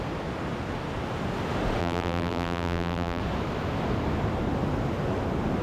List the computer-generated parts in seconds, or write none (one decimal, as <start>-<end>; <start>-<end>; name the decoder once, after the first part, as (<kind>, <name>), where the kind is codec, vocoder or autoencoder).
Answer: 1.8-3.2 (vocoder, BigVGAN v2)